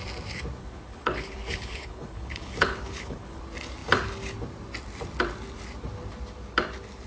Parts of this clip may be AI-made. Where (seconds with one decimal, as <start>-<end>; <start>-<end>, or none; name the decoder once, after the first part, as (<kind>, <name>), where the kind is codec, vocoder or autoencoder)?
0.6-3.4 (codec, HILCodec)